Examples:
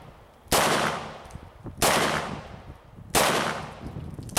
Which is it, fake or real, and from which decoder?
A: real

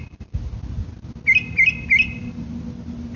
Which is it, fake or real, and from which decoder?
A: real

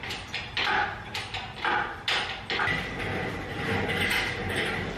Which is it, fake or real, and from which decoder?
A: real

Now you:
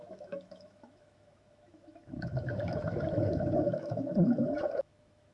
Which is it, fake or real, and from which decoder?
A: fake, autoencoder, DAC-VAE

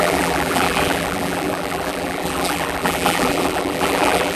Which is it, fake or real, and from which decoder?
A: fake, vocoder, BigVGAN v2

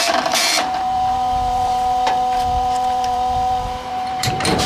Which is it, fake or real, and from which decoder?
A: fake, vocoder, BigVGAN v2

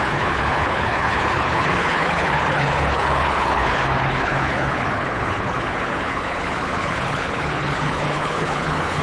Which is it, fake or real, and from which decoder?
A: fake, codec, HILCodec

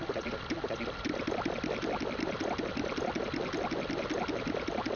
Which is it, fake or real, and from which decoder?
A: real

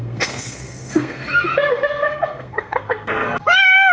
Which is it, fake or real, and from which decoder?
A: fake, codec, SNAC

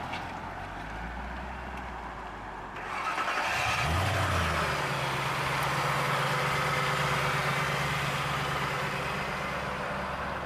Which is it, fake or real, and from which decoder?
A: real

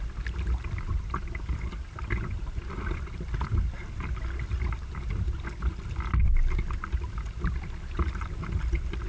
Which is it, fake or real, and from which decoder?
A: real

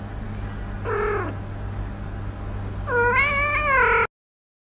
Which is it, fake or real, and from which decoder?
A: real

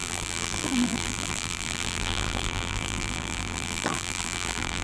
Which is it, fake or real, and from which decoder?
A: fake, vocoder, BigVGAN v2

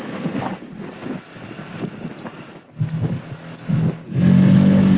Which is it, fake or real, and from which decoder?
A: real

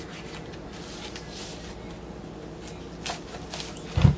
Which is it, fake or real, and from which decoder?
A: real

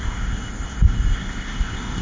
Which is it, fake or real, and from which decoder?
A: fake, codec, ZipCodec